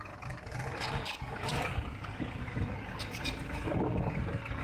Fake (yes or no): yes